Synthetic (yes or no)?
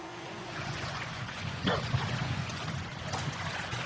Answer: yes